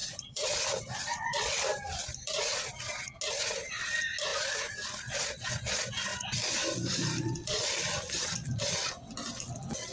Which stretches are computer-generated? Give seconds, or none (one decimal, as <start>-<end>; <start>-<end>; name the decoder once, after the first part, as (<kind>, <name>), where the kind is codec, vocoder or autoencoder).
0.0-2.7 (vocoder, BigVGAN v2); 4.3-5.5; 6.1-8.6